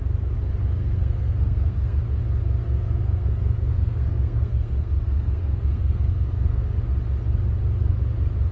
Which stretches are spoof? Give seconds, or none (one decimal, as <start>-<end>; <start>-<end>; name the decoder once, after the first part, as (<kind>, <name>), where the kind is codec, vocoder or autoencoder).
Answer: 0.5-2.0 (codec, SNAC); 2.6-6.8